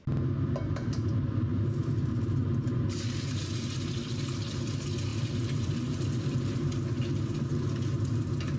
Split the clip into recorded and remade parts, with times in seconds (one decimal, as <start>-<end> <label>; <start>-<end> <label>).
0.0-1.5 recorded; 1.5-2.7 remade; 2.7-5.1 recorded; 5.1-6.0 remade; 6.0-8.6 recorded